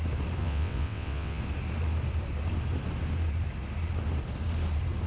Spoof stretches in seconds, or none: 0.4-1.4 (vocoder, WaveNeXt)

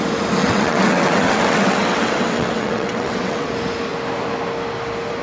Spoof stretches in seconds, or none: 0.4-3.5 (vocoder, WaveNeXt)

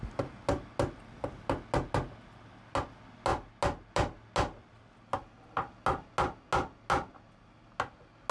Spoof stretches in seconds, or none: none

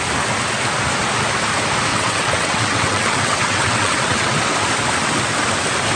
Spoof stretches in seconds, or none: 1.9-4.4 (vocoder, WaveNeXt)

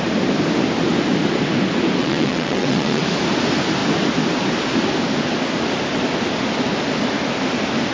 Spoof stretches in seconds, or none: 2.0-3.0 (vocoder, WaveNeXt)

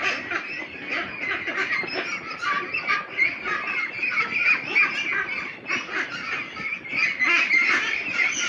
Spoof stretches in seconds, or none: none

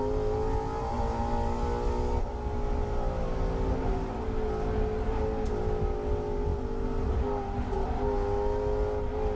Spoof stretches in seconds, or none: none

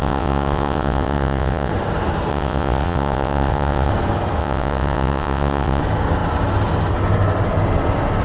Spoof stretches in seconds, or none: 0.0-1.7 (vocoder, WaveNeXt); 2.3-3.9; 4.4-5.8